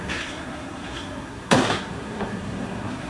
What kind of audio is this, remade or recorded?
remade